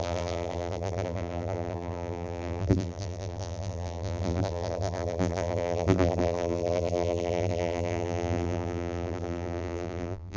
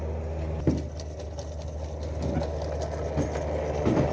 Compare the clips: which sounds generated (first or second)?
first